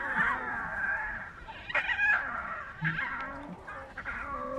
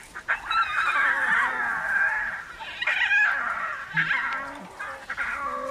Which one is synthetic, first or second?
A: first